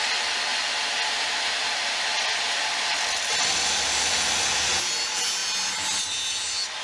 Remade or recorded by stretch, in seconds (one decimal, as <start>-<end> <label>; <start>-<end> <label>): 0.0-6.8 recorded